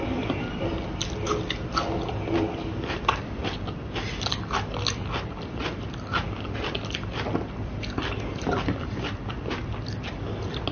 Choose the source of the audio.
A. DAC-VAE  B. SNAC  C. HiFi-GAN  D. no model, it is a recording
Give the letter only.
D